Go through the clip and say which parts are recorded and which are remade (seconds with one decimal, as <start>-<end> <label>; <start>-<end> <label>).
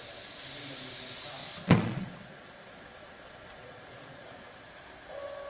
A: 0.0-1.4 recorded; 1.4-4.7 remade; 4.7-5.5 recorded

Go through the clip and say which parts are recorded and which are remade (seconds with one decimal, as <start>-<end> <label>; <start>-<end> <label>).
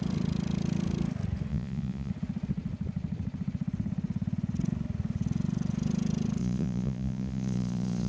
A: 0.0-1.5 recorded; 1.5-2.1 remade; 2.1-6.4 recorded; 6.4-8.1 remade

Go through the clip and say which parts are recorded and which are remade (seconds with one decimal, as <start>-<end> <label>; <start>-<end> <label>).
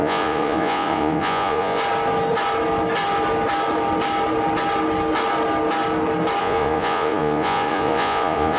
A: 0.0-1.8 remade; 1.8-6.4 recorded; 6.4-8.6 remade